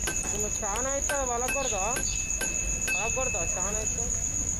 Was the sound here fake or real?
real